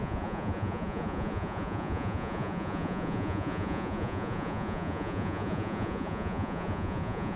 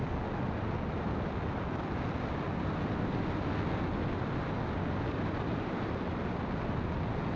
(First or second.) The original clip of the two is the second